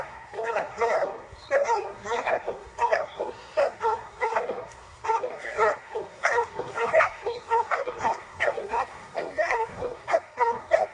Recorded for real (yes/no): no